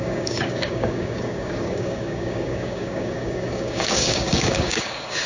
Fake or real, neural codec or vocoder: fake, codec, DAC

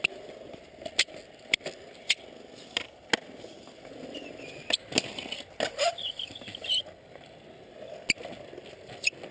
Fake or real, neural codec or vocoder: real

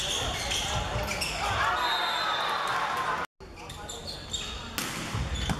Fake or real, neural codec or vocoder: real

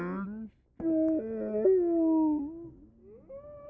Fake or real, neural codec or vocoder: real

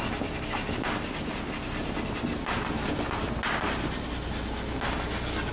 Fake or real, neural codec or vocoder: real